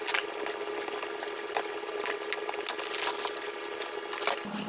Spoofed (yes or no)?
no